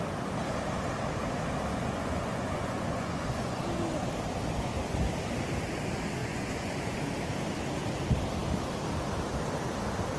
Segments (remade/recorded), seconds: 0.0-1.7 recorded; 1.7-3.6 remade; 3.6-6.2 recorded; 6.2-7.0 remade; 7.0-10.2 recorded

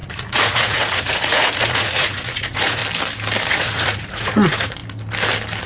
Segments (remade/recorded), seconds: 0.0-2.8 remade; 2.8-3.5 recorded; 3.5-4.8 remade; 4.8-5.7 recorded

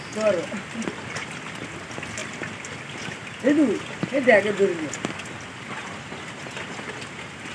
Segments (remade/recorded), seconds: 0.0-7.5 recorded